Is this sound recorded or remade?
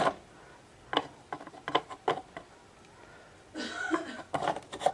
recorded